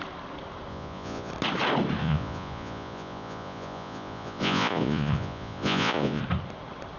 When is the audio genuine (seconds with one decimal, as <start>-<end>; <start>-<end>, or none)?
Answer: 0.0-0.7; 1.3-2.0; 6.2-7.0